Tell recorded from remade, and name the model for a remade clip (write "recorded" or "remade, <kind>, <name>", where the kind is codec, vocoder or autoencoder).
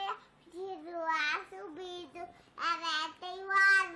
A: recorded